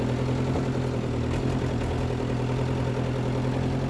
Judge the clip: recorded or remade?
recorded